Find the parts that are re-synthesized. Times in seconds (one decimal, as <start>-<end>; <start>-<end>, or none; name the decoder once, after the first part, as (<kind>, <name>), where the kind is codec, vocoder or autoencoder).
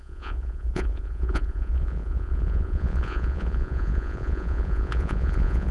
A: 0.0-5.7 (vocoder, Vocos)